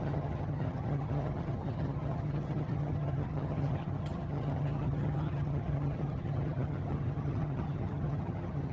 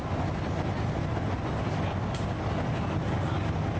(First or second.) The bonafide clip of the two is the second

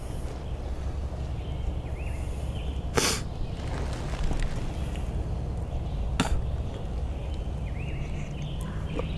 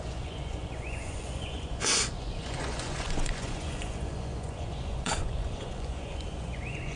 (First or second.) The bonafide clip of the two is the first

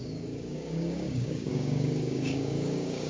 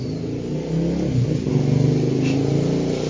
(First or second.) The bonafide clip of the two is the second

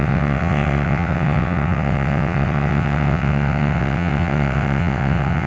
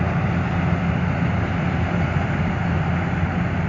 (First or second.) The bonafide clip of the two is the second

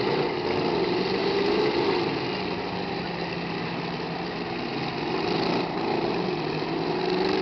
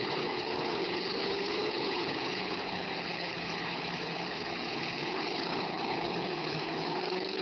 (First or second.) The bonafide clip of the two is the first